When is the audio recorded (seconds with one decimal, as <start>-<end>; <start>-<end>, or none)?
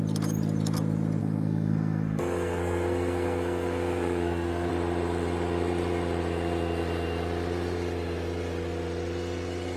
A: 0.0-1.2; 4.7-9.8